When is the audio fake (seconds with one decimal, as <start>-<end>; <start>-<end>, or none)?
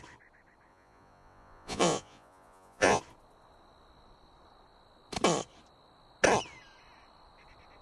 0.7-3.0